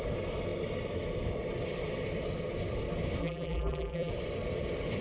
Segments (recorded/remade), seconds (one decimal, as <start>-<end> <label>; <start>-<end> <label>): 0.0-3.2 recorded; 3.2-4.1 remade; 4.1-5.0 recorded